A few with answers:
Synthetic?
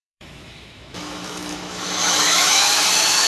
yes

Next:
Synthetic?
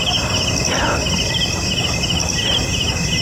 no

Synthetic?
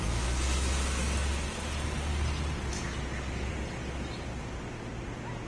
no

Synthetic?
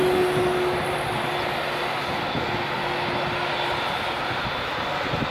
no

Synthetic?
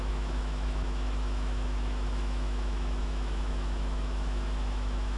yes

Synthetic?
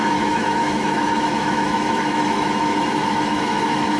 yes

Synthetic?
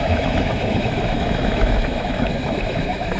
yes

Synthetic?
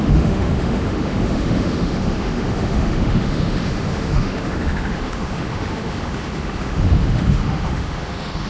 yes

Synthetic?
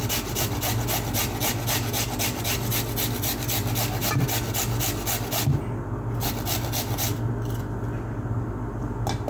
no